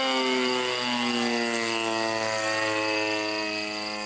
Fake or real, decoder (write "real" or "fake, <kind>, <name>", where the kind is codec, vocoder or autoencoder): real